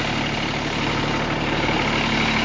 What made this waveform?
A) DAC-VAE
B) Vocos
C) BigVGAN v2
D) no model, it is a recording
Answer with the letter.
D